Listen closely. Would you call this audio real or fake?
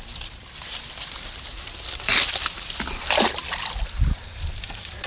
fake